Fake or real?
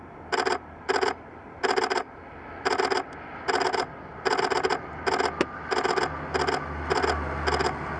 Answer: real